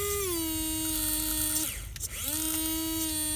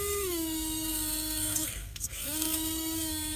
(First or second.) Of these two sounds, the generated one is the second